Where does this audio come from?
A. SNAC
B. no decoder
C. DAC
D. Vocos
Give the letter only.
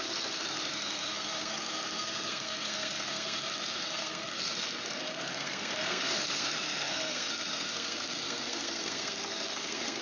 A